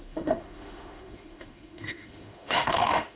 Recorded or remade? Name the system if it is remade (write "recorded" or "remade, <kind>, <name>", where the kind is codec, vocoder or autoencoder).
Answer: remade, autoencoder, DAC-VAE